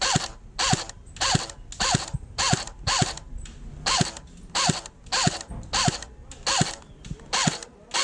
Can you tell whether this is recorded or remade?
recorded